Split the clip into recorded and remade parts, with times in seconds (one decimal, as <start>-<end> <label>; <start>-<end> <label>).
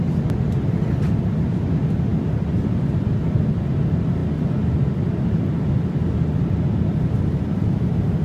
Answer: 0.0-8.2 recorded